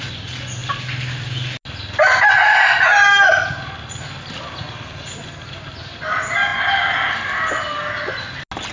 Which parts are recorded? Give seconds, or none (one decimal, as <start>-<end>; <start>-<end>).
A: 0.0-8.7